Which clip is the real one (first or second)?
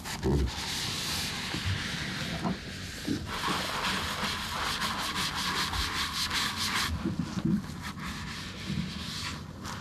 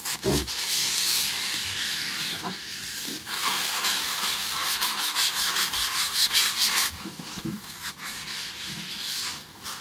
first